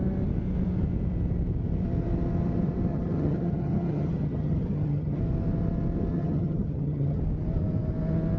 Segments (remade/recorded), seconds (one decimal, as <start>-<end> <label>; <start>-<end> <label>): 0.0-2.9 recorded; 2.9-5.2 remade; 5.2-6.1 recorded; 6.1-7.2 remade; 7.2-8.4 recorded